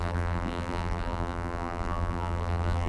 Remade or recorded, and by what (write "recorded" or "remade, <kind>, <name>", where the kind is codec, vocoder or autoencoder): remade, vocoder, BigVGAN v2